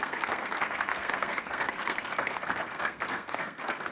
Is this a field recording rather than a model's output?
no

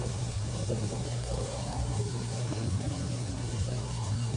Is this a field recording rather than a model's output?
no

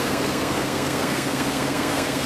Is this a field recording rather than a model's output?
no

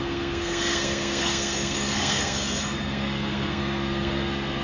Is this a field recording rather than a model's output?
no